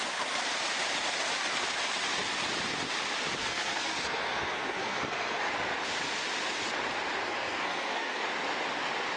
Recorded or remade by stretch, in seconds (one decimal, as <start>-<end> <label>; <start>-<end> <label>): 0.0-3.4 recorded; 3.4-5.5 remade; 5.5-7.2 recorded; 7.2-8.2 remade; 8.2-9.2 recorded